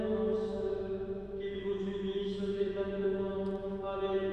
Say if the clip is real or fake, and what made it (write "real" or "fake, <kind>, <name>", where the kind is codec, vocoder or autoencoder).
fake, autoencoder, DAC-VAE